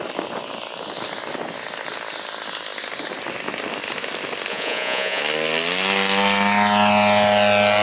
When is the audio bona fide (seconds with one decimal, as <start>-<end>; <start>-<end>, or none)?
0.0-4.5; 5.2-7.8